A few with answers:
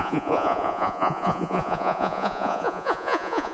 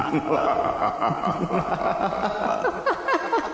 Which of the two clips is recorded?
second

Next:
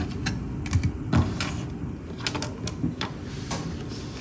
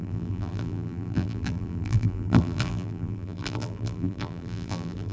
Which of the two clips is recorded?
first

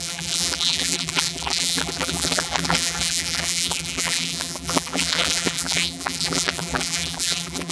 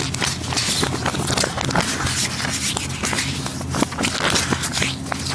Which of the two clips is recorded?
second